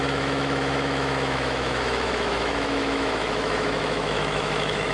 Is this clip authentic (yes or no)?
no